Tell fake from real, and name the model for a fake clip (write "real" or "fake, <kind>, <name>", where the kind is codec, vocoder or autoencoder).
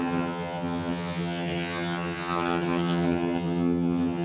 fake, vocoder, HiFi-GAN